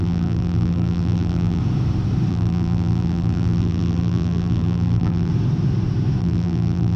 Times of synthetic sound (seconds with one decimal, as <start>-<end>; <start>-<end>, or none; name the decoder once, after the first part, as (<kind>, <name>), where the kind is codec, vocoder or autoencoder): 0.0-1.6 (vocoder, BigVGAN v2); 2.3-5.3; 6.2-7.0